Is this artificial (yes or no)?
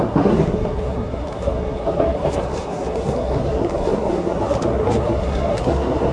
yes